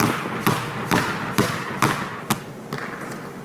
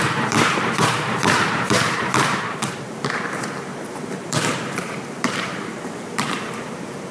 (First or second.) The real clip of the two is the first